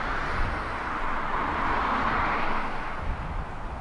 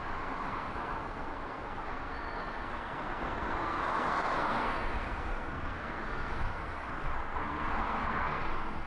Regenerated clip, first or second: second